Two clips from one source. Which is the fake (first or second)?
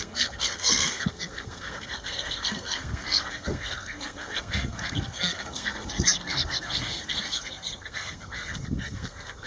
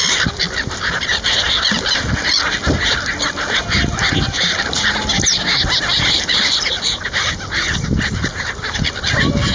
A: first